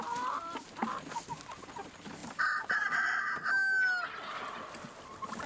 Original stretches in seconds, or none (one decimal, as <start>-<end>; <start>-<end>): 0.0-5.5